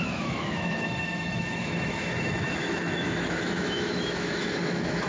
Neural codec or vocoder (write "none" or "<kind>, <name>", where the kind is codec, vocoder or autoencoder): autoencoder, DAC-VAE